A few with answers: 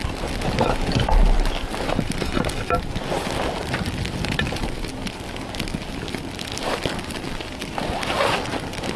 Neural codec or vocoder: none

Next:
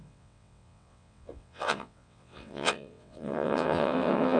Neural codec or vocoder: vocoder, WaveNeXt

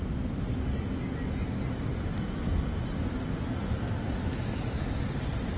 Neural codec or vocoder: none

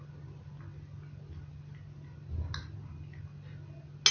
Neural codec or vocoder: none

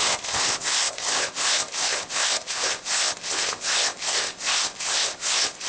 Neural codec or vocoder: codec, ZipCodec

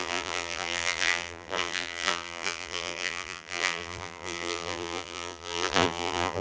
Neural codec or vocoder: vocoder, BigVGAN v2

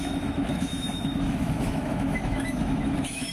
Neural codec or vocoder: autoencoder, DAC-VAE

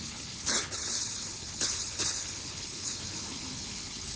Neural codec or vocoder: codec, HILCodec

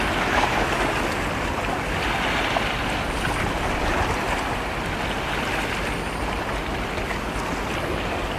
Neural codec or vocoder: none